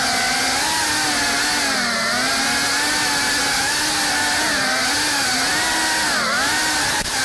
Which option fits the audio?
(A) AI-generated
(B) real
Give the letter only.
B